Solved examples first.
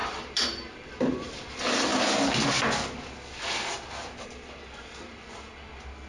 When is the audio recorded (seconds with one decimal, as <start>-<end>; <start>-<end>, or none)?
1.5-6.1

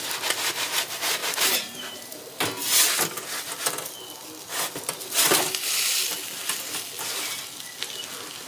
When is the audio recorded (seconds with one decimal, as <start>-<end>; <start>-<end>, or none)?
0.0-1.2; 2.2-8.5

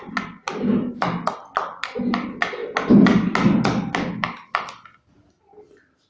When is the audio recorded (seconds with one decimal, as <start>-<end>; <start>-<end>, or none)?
0.0-6.1

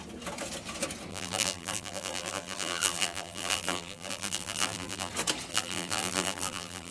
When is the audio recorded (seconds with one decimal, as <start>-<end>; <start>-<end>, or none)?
0.0-1.1; 5.1-5.5

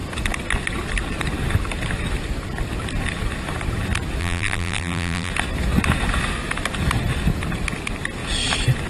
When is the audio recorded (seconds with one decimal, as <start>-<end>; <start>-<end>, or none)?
0.0-4.2; 5.3-8.9

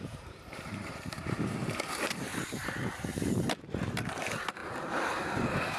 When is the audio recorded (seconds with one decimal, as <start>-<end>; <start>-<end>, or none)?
none

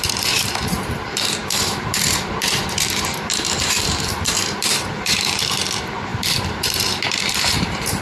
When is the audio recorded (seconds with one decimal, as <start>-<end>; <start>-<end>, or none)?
none

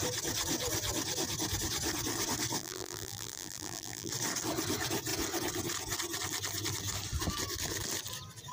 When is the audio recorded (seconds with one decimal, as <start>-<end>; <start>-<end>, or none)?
0.0-2.6; 4.1-8.5